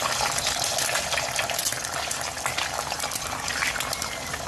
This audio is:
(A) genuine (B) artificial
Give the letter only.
A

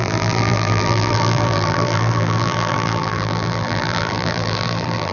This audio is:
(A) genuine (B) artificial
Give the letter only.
B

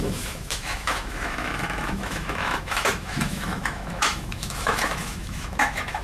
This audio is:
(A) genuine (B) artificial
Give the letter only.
B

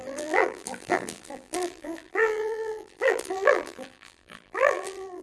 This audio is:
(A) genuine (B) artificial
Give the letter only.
B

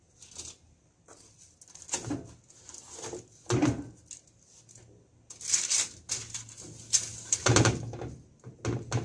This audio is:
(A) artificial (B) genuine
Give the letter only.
B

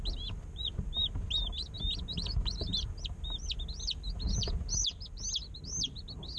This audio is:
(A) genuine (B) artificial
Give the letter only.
A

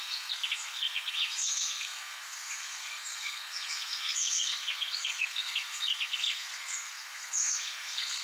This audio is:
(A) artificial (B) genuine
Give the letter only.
A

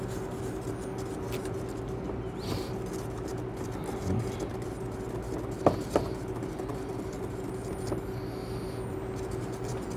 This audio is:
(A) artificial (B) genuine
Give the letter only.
B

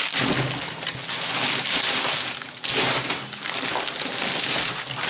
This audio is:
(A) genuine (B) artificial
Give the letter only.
A